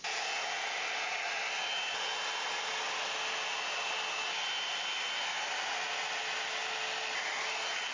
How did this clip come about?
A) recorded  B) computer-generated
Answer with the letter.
A